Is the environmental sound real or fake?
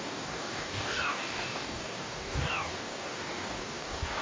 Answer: fake